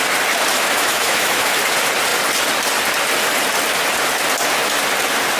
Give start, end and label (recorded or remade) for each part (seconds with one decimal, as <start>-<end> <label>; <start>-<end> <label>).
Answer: 0.0-0.5 recorded; 0.5-1.6 remade; 1.6-5.4 recorded